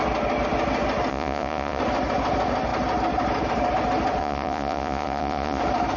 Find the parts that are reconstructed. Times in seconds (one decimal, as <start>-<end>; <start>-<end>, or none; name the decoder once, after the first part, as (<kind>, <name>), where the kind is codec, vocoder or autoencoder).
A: 1.1-1.8 (vocoder, Vocos); 4.2-5.6